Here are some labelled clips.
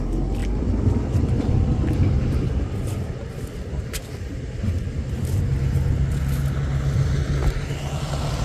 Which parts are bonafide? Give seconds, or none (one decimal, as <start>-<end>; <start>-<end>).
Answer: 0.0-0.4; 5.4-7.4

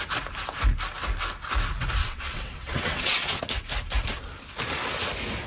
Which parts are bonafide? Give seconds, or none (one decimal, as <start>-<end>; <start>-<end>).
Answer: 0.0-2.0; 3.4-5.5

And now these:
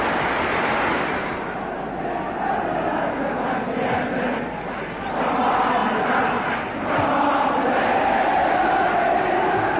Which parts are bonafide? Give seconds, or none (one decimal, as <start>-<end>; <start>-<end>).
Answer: 0.0-9.8